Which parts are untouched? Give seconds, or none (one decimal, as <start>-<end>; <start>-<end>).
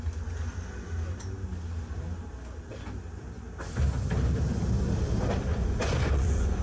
0.0-5.5